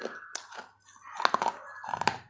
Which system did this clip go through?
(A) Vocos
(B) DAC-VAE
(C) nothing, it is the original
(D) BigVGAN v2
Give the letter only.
C